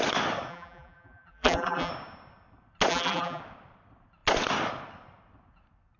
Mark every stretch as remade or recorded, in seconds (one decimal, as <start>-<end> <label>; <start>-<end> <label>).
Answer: 0.0-0.5 recorded; 0.5-1.9 remade; 1.9-2.9 recorded; 2.9-3.4 remade; 3.4-6.0 recorded